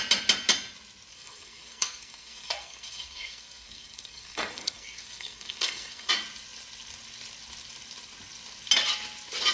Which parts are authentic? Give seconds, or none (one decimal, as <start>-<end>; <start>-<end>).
0.0-1.1; 6.1-9.5